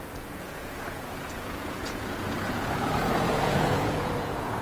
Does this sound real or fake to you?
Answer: fake